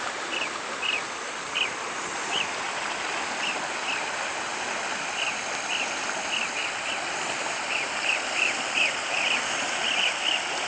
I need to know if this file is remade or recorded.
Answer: remade